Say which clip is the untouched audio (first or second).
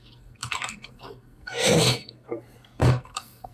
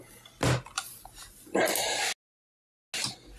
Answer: second